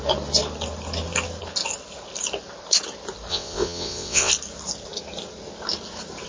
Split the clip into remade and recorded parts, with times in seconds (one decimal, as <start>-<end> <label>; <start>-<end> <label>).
0.0-3.3 recorded; 3.3-4.3 remade; 4.3-6.3 recorded